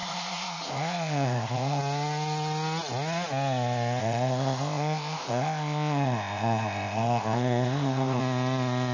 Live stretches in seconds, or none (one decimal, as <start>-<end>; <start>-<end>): 1.8-4.0; 8.2-8.9